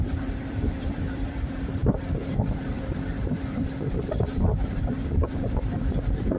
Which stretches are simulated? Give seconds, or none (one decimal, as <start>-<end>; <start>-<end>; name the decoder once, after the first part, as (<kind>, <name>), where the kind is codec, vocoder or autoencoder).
0.0-6.4 (vocoder, BigVGAN v2)